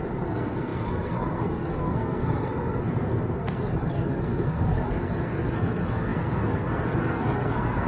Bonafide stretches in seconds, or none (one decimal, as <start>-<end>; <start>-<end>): none